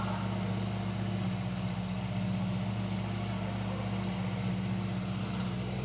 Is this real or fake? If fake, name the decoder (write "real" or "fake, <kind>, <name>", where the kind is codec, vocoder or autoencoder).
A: real